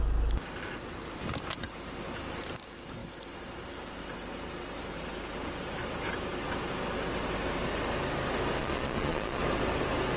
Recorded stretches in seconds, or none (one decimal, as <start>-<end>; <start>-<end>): 0.0-8.6; 9.4-10.2